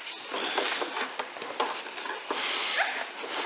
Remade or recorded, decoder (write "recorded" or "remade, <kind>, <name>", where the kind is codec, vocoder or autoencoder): remade, vocoder, BigVGAN v2